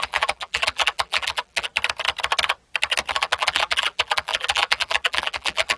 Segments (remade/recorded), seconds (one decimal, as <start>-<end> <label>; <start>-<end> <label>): 0.0-1.7 remade; 1.7-3.1 recorded; 3.1-5.8 remade